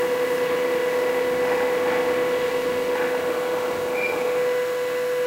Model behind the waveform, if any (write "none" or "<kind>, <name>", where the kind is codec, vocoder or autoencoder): autoencoder, DAC-VAE